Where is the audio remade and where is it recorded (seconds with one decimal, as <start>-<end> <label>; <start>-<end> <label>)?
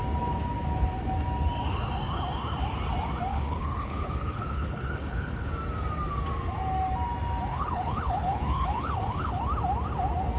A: 0.0-3.3 recorded; 3.3-5.5 remade; 5.5-7.5 recorded; 7.5-9.4 remade; 9.4-10.4 recorded